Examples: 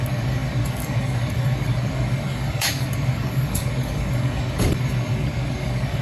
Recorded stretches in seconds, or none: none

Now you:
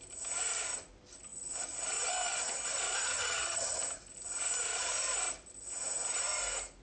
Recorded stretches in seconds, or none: 0.0-3.1; 3.8-6.8

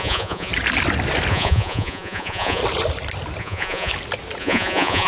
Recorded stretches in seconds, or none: 0.5-1.3; 2.6-3.4; 3.9-4.4

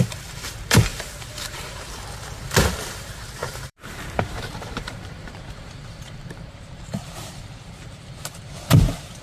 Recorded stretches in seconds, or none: 0.0-0.9; 2.0-3.4; 8.1-9.2